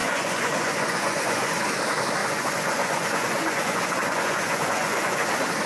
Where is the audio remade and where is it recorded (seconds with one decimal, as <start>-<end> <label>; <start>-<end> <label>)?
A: 0.0-1.6 remade; 1.6-2.2 recorded; 2.2-5.3 remade; 5.3-5.7 recorded